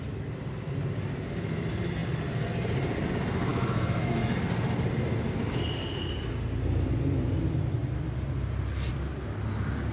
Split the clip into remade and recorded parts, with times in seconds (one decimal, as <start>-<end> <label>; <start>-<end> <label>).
0.0-3.5 recorded; 3.5-4.4 remade; 4.4-9.9 recorded